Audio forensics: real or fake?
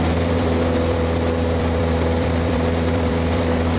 fake